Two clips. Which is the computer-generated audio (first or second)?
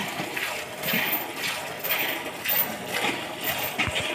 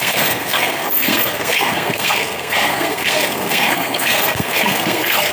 second